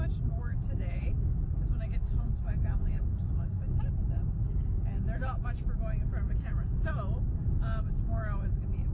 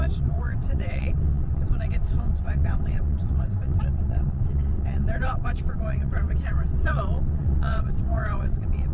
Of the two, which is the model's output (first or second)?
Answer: second